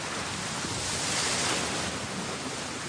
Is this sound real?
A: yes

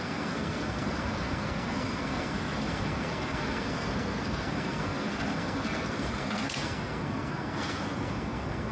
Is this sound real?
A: no